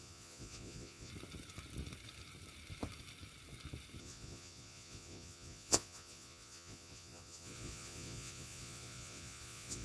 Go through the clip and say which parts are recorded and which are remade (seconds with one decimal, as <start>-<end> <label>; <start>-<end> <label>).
0.0-1.1 remade; 1.1-4.0 recorded; 4.0-9.8 remade